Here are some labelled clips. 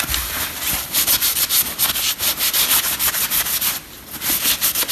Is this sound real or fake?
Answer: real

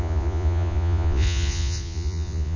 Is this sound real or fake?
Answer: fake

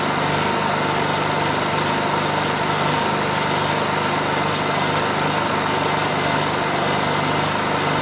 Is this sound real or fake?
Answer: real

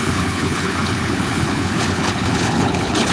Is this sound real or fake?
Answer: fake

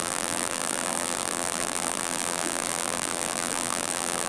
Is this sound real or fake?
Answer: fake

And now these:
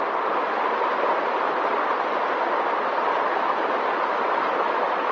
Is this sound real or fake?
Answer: real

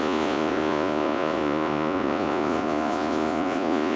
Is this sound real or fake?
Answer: fake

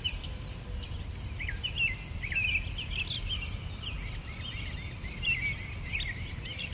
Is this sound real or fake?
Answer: real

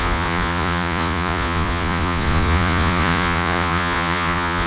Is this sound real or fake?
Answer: fake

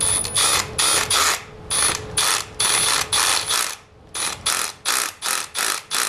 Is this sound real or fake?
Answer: real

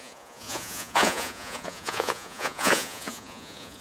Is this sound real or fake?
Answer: fake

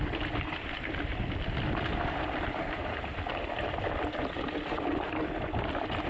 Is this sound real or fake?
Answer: fake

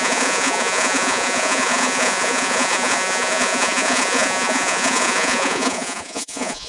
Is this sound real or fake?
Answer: fake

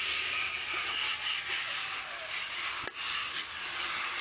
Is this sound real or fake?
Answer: real